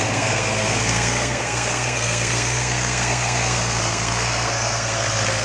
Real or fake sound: fake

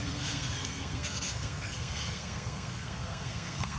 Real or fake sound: fake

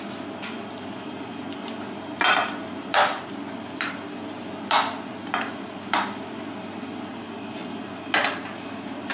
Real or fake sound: real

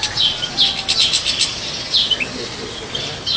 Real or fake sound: real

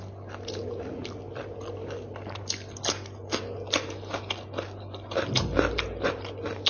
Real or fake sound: real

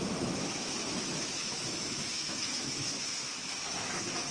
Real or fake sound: fake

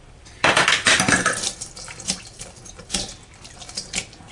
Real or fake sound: fake